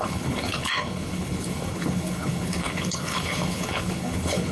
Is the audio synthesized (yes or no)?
yes